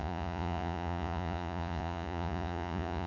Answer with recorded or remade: remade